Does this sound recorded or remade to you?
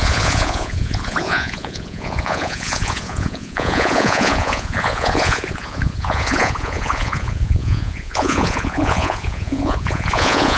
remade